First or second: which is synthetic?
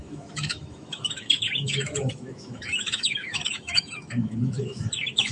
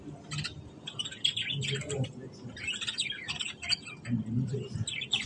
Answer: first